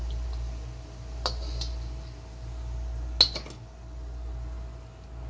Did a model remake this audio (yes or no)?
no